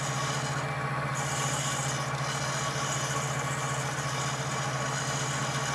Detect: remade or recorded recorded